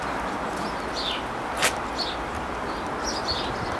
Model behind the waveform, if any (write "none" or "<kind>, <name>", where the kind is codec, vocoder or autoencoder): none